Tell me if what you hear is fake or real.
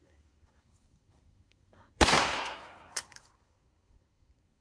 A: fake